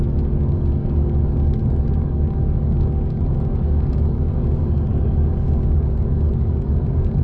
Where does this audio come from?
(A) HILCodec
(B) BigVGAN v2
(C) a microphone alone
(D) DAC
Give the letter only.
D